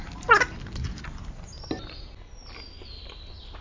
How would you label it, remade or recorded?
recorded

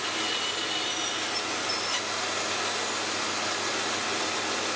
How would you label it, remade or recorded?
recorded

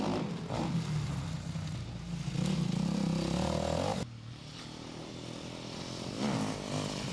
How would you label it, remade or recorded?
recorded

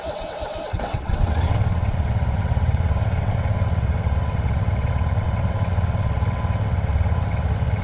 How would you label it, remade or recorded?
remade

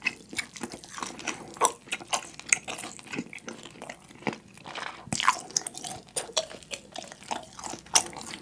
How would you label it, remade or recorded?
recorded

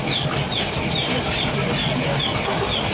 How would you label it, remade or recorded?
recorded